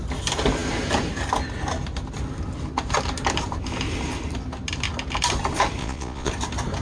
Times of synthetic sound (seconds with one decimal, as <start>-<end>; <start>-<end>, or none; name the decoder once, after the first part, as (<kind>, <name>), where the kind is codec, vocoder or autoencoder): 5.8-6.3 (vocoder, Vocos)